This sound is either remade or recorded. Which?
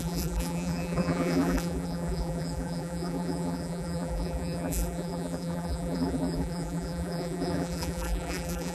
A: remade